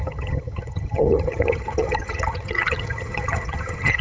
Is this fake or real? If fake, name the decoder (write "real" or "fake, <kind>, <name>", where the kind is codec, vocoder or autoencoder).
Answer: fake, vocoder, HiFi-GAN